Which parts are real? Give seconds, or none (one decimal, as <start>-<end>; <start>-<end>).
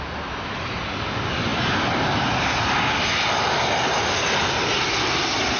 0.0-5.6